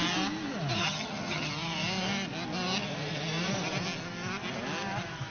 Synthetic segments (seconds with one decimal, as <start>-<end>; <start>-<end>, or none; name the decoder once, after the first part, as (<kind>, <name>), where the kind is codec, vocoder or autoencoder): 0.8-1.5 (vocoder, HiFi-GAN)